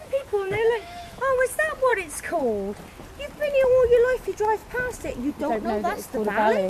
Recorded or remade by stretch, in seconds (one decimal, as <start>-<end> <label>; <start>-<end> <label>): 0.0-1.2 remade; 1.2-6.7 recorded